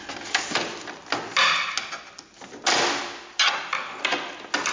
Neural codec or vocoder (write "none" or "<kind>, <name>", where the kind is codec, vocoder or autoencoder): none